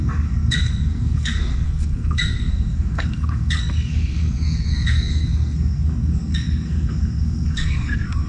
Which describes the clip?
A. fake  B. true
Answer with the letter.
A